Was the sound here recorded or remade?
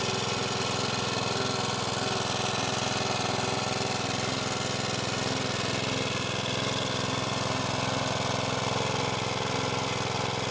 recorded